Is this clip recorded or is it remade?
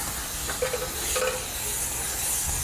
recorded